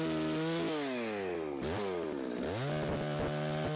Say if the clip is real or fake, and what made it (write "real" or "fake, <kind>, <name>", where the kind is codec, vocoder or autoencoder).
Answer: real